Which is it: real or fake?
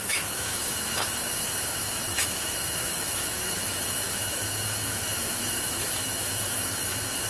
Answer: fake